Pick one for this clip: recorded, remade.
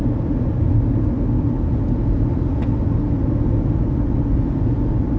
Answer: recorded